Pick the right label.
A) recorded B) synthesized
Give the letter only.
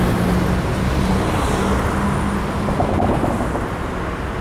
A